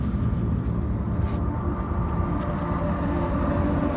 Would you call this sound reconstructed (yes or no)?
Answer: no